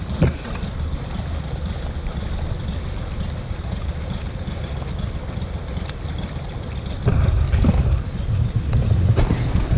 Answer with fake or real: real